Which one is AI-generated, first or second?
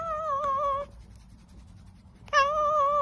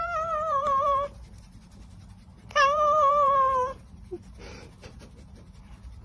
second